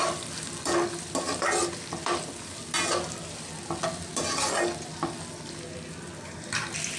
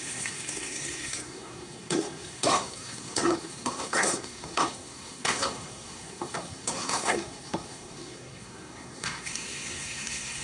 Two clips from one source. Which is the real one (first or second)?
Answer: first